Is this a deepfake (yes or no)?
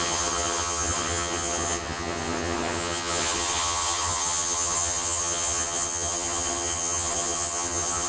yes